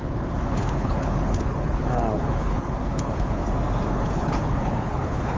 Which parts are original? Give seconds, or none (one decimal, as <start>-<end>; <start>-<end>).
3.4-3.9